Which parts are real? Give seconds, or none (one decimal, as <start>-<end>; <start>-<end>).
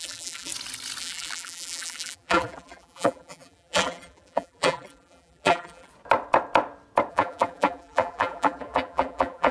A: 0.5-1.0; 5.9-7.1